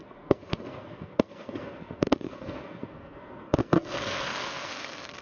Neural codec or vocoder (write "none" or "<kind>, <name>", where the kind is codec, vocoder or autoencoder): codec, SNAC